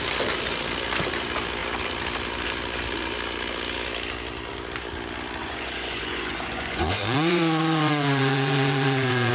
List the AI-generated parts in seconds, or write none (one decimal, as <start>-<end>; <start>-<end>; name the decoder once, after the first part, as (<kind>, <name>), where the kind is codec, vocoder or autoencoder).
5.4-9.3 (vocoder, Vocos)